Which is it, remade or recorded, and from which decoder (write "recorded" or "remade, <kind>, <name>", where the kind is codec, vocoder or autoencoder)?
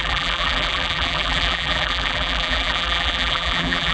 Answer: remade, vocoder, BigVGAN v2